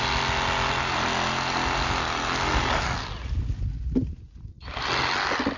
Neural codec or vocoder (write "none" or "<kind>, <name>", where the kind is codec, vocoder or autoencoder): none